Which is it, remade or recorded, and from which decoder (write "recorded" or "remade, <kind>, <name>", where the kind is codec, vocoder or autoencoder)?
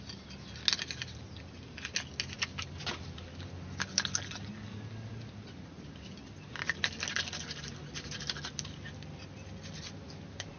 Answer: recorded